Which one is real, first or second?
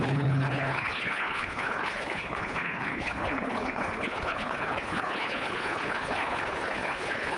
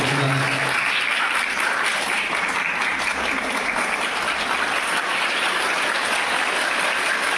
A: second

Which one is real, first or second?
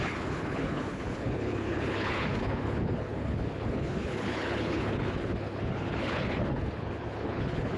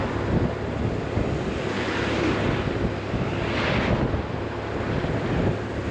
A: second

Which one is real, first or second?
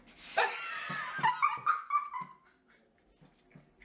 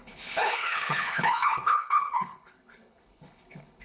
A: first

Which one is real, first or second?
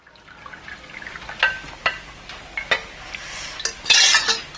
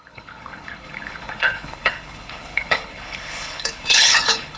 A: first